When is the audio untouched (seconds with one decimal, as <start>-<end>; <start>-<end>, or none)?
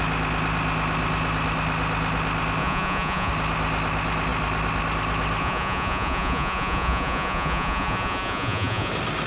0.0-2.6; 3.3-5.4; 8.9-9.3